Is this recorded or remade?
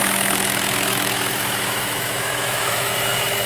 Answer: remade